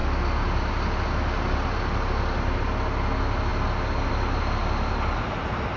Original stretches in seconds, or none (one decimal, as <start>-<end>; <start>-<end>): 0.0-5.8